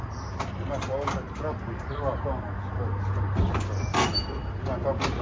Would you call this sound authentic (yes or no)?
yes